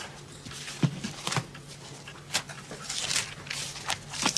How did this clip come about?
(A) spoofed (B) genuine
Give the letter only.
B